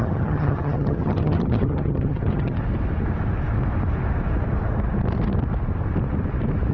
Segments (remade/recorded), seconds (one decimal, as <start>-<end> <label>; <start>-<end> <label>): 0.0-2.6 remade; 2.6-6.7 recorded